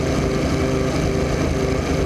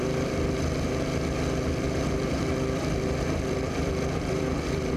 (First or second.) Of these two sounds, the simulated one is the second